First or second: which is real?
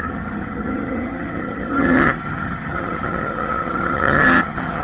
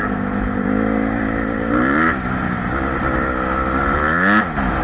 second